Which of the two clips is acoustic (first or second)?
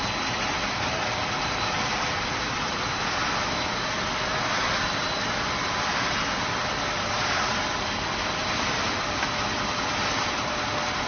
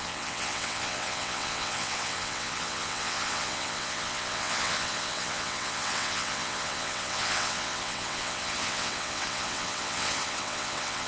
first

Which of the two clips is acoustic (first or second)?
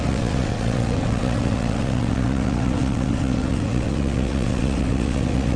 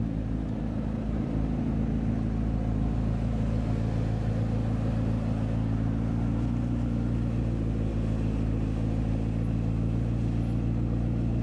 second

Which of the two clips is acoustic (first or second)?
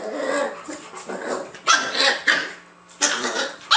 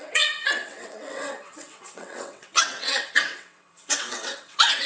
first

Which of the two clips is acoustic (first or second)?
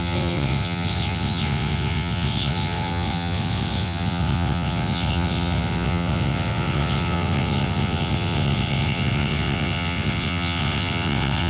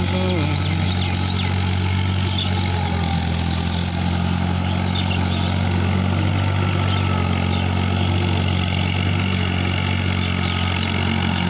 second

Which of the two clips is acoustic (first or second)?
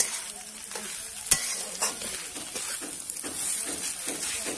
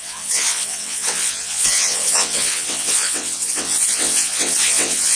first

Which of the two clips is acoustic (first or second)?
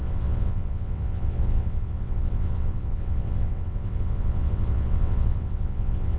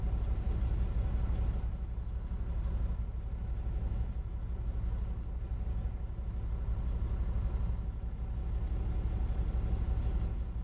second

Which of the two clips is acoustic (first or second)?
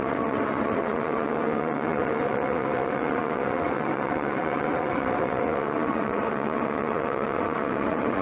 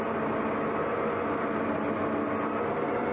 second